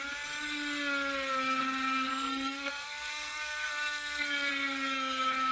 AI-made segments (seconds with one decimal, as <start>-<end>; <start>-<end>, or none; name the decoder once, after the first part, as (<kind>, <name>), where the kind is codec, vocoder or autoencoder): 2.1-4.5 (codec, SNAC)